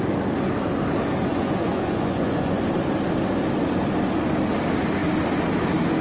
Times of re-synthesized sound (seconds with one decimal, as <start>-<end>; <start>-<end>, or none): 1.3-2.6

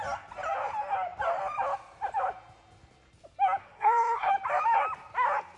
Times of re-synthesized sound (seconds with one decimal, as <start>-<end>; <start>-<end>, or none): 3.6-4.3

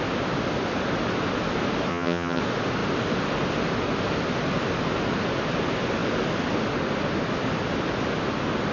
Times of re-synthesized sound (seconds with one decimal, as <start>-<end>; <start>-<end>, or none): 1.9-2.4